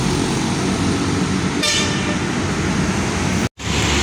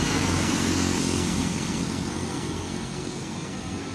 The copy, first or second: second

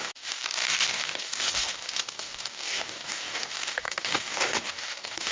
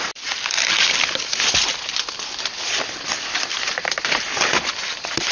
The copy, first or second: first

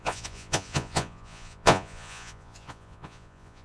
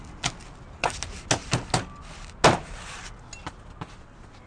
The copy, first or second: first